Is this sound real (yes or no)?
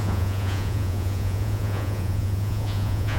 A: no